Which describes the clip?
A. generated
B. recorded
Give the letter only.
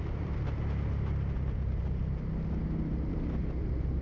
B